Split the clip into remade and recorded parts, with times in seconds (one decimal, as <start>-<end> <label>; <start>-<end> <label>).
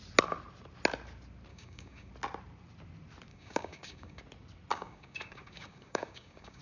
0.0-1.5 recorded; 1.5-2.1 remade; 2.1-3.3 recorded; 3.3-4.2 remade; 4.2-4.7 recorded; 4.7-6.6 remade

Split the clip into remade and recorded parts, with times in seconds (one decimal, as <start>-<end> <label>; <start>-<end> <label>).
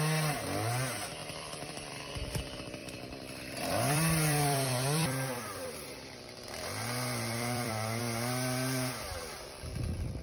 0.0-1.2 recorded; 1.2-2.1 remade; 2.1-2.8 recorded; 2.8-8.0 remade; 8.0-10.2 recorded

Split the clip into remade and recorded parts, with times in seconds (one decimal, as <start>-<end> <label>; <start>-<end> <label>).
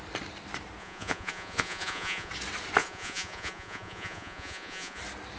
0.0-0.8 recorded; 0.8-2.3 remade; 2.3-2.8 recorded; 2.8-5.0 remade; 5.0-5.4 recorded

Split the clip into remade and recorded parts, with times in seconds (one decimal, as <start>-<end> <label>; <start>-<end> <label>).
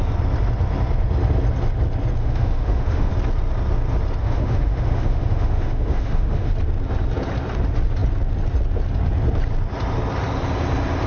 0.0-2.2 recorded; 2.2-3.1 remade; 3.1-4.2 recorded; 4.2-6.5 remade; 6.5-11.1 recorded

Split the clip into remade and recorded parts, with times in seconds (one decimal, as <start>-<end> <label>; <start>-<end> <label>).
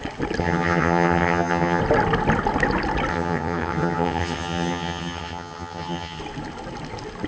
0.0-0.4 recorded; 0.4-1.8 remade; 1.8-3.1 recorded; 3.1-6.2 remade; 6.2-7.3 recorded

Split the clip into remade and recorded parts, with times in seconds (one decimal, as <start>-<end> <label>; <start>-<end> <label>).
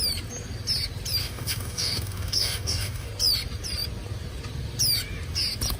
0.0-1.2 recorded; 1.2-3.1 remade; 3.1-5.8 recorded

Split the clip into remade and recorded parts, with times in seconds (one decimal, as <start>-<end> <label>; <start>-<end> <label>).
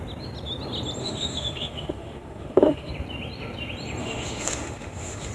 0.0-1.0 recorded; 1.0-2.9 remade; 2.9-4.0 recorded; 4.0-5.3 remade